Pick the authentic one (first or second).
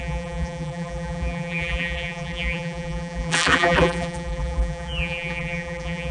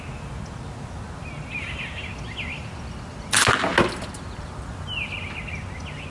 second